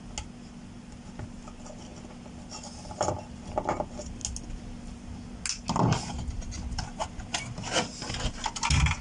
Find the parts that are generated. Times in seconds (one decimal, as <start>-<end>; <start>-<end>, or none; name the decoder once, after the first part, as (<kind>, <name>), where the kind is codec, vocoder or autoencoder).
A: none

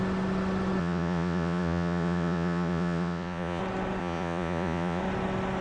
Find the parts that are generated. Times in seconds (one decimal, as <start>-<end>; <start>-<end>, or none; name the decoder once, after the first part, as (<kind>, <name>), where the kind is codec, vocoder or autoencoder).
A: 0.8-3.6 (vocoder, Vocos); 4.0-5.0

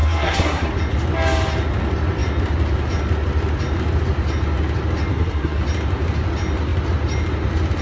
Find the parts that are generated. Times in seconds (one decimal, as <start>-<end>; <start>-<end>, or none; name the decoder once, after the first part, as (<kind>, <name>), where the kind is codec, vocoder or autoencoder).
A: 0.0-0.7 (codec, SNAC); 5.1-5.6

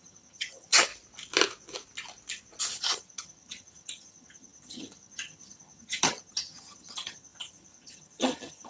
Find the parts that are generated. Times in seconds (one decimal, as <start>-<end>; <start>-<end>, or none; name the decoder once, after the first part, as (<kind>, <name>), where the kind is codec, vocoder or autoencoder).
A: 0.0-0.9 (vocoder, HiFi-GAN); 2.8-8.7

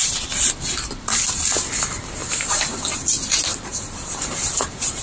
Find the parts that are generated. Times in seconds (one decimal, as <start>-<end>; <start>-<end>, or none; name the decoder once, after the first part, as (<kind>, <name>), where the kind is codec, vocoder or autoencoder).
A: 2.2-2.9 (vocoder, BigVGAN v2); 3.5-5.0

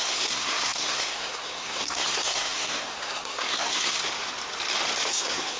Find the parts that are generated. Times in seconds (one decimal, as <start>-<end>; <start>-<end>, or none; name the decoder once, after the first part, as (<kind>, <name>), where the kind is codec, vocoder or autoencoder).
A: 0.0-4.0 (codec, SNAC); 5.1-5.6

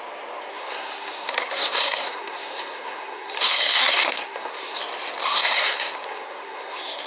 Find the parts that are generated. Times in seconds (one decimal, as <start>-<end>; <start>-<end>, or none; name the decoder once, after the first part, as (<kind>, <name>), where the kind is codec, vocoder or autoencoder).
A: 0.5-4.8 (codec, SNAC); 5.2-7.1

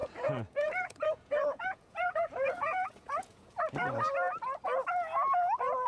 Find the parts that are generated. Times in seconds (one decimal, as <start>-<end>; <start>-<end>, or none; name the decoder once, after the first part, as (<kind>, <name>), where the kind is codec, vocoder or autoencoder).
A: 0.0-3.5 (vocoder, Vocos)